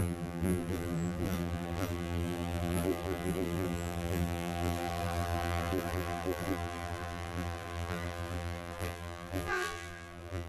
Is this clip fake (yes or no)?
yes